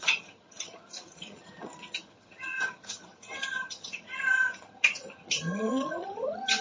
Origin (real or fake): fake